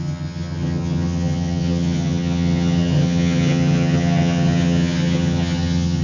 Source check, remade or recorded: remade